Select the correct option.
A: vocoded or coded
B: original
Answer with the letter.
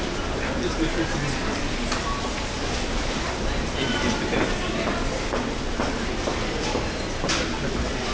B